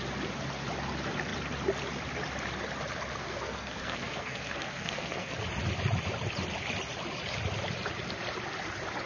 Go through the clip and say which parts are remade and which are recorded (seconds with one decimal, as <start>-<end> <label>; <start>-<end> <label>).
0.0-3.2 recorded; 3.2-5.3 remade; 5.3-9.1 recorded